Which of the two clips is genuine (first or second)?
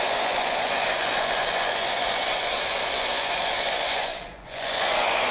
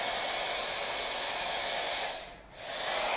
second